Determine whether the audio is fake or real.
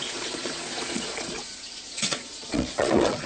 fake